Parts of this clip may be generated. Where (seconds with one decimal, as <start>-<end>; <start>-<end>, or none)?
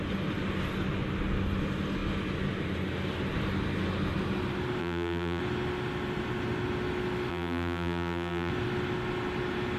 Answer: 4.8-5.4; 7.3-8.5